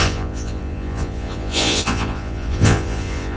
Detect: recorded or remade remade